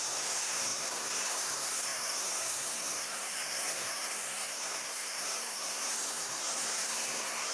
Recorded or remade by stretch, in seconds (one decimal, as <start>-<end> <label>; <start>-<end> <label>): 0.0-7.5 remade